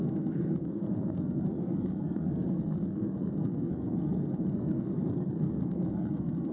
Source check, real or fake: fake